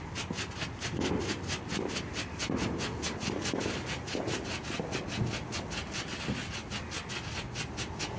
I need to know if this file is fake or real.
real